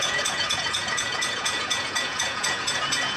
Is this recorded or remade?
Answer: remade